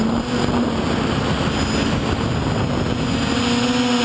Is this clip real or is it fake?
real